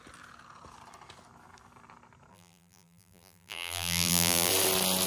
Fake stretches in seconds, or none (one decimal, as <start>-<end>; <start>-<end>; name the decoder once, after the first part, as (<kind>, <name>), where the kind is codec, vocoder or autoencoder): 2.3-4.5 (vocoder, BigVGAN v2)